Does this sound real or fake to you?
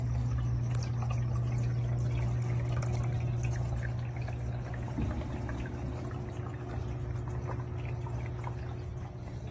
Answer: real